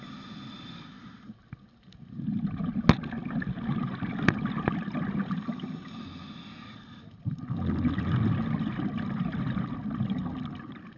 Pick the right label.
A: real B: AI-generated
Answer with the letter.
A